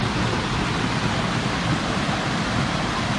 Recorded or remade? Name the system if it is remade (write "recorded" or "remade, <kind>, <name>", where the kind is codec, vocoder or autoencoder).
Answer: recorded